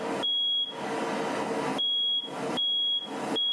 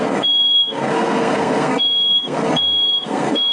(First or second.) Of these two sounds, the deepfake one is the second